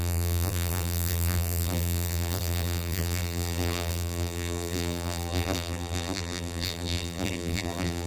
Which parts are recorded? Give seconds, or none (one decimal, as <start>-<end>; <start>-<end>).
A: none